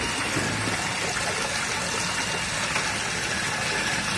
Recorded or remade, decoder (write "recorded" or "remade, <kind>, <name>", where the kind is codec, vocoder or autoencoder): recorded